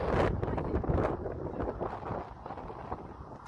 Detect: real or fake real